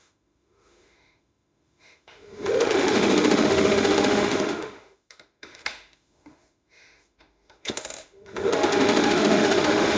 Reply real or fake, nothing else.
fake